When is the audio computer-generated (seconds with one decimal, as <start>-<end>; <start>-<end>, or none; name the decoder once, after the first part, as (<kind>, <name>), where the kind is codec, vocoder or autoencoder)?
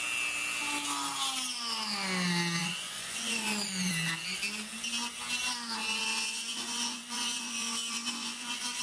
2.6-3.9 (vocoder, Vocos); 5.8-8.8